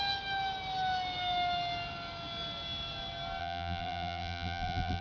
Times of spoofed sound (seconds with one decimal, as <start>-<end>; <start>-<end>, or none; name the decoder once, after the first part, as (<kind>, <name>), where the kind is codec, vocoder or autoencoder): 3.4-5.0 (vocoder, BigVGAN v2)